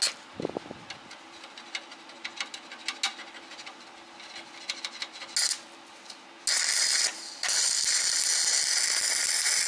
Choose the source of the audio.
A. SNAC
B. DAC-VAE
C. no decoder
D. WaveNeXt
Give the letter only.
C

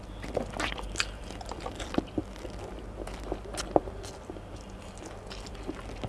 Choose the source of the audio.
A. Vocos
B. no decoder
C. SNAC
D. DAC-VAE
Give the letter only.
B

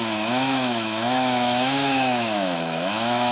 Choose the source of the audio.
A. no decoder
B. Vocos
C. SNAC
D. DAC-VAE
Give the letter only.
D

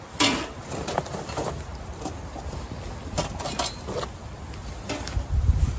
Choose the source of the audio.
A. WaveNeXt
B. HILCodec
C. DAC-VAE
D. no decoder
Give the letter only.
D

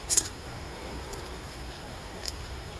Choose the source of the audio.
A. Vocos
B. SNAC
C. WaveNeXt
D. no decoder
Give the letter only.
B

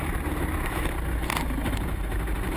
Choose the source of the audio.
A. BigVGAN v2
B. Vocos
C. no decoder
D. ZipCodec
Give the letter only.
A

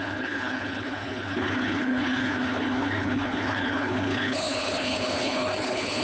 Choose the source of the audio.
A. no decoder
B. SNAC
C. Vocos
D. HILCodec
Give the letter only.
D